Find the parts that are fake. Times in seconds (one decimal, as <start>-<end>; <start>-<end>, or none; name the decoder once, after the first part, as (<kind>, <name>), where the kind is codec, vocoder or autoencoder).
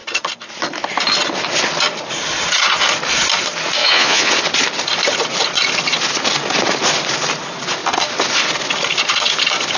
3.8-4.3 (vocoder, Vocos)